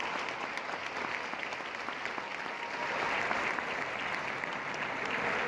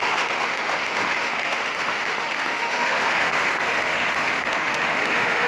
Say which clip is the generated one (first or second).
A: second